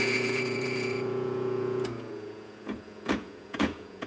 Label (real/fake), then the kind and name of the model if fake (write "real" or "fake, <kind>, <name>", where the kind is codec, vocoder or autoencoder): fake, vocoder, Vocos